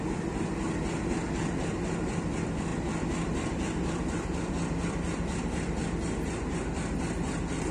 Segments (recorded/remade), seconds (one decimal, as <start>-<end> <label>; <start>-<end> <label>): 0.0-7.7 recorded